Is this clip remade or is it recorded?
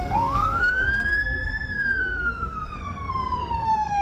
remade